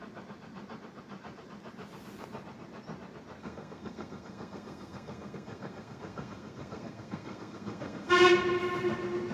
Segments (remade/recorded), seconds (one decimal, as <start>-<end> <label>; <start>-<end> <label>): 0.0-3.4 recorded; 3.4-8.1 remade; 8.1-9.3 recorded

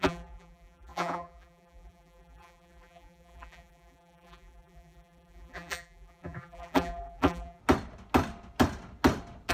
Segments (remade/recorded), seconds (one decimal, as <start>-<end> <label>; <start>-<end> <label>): 0.0-7.6 remade; 7.6-9.5 recorded